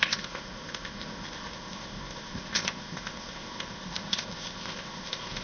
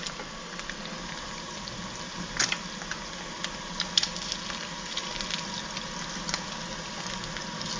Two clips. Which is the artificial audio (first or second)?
first